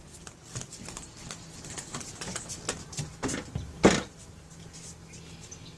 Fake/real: real